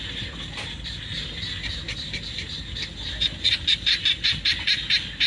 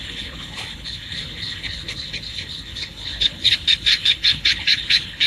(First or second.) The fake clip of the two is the second